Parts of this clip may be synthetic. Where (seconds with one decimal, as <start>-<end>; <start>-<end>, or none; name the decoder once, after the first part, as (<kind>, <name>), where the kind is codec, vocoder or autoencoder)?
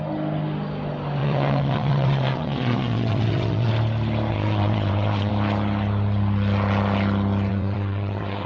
1.2-3.7 (vocoder, WaveNeXt); 4.3-5.3; 7.5-8.5